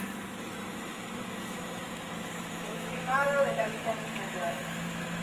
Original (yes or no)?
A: no